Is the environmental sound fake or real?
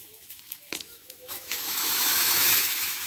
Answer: fake